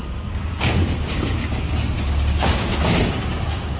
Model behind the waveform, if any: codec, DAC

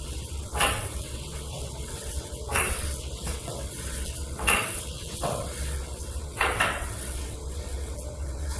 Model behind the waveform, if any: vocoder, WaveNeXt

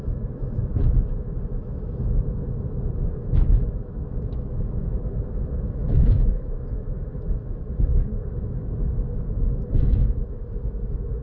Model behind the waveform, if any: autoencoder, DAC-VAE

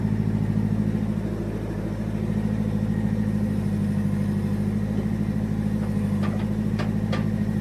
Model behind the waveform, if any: none